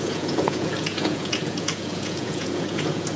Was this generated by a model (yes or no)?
yes